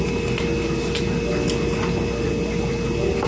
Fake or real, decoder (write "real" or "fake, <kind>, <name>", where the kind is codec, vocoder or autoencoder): real